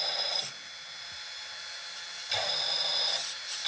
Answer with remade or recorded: recorded